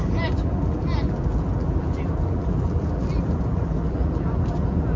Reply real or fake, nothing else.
fake